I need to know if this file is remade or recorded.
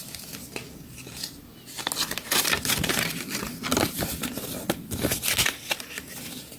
recorded